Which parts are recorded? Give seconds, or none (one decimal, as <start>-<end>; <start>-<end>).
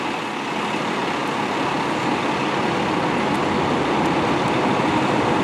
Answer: 0.0-5.4